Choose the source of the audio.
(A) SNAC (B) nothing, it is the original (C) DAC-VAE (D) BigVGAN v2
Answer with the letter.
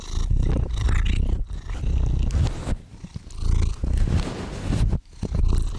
B